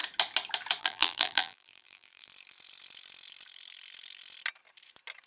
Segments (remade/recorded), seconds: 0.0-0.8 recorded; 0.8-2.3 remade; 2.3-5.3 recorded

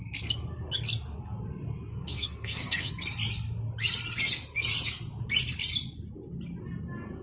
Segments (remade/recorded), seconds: 0.0-1.9 recorded; 1.9-2.9 remade; 2.9-7.2 recorded

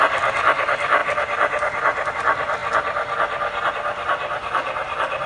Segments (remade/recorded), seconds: 0.0-5.3 recorded

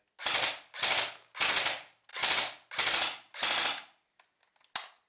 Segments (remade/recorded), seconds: 0.0-5.1 recorded

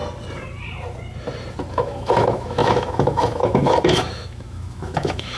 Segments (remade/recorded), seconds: 0.0-1.7 recorded; 1.7-5.4 remade

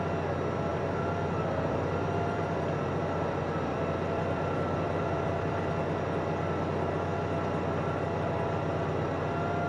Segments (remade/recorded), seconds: 0.0-0.7 recorded; 0.7-5.7 remade; 5.7-9.7 recorded

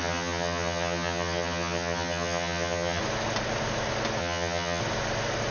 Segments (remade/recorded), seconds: 0.0-3.0 remade; 3.0-4.2 recorded; 4.2-4.8 remade; 4.8-5.5 recorded

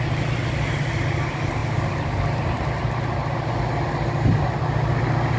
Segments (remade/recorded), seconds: 0.0-5.4 recorded